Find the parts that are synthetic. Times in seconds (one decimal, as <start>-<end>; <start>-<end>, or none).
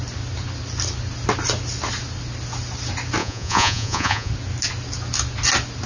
3.2-4.3